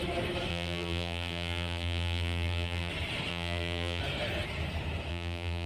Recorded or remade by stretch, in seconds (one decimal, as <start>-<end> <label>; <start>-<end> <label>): 0.0-0.5 recorded; 0.5-2.9 remade; 2.9-3.3 recorded; 3.3-4.0 remade; 4.0-5.1 recorded; 5.1-5.7 remade